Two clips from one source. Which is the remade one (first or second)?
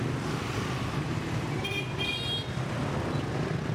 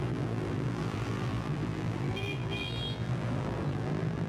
second